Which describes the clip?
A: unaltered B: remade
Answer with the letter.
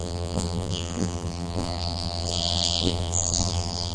B